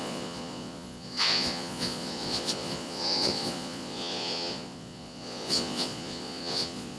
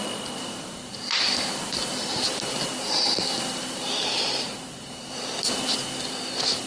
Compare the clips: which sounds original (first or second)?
second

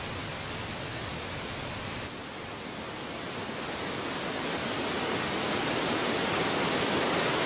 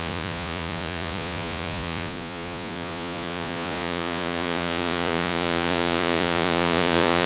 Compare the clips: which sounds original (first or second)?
first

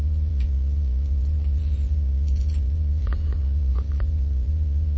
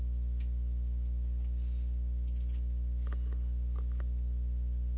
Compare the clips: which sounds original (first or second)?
second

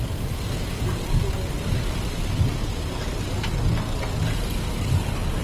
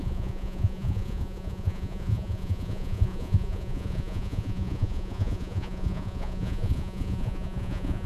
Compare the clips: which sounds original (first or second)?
first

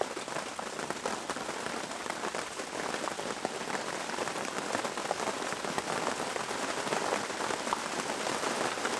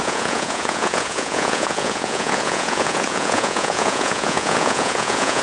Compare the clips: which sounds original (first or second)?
first